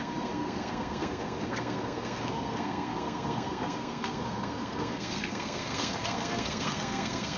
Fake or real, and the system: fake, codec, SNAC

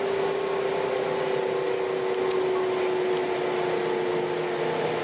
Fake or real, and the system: real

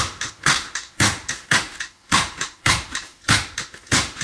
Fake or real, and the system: fake, autoencoder, DAC-VAE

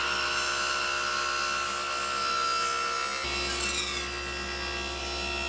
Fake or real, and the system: real